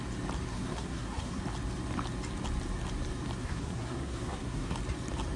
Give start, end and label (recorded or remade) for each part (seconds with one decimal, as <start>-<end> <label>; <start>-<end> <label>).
0.0-0.5 recorded; 0.5-1.4 remade; 1.4-3.4 recorded; 3.4-4.7 remade; 4.7-5.4 recorded